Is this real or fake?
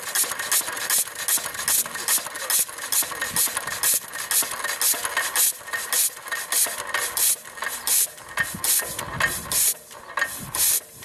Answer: real